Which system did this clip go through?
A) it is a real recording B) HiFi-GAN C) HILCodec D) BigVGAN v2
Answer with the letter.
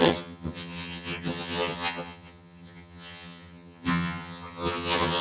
B